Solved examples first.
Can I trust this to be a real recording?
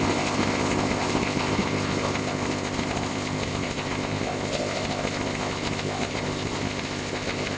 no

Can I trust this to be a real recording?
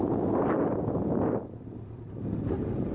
yes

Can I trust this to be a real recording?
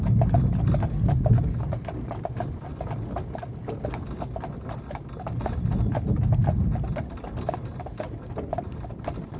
yes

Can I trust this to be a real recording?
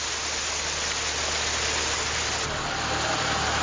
yes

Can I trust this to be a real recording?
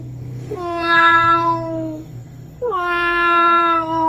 no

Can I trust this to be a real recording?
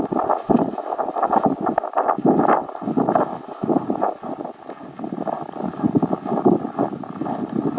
yes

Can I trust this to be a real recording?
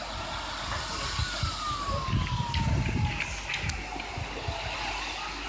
yes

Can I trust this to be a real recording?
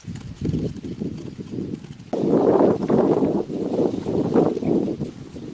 yes